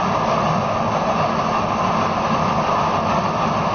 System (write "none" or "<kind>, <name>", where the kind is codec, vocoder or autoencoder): none